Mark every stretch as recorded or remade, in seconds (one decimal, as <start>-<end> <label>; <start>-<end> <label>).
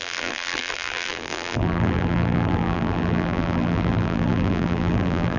0.0-5.4 remade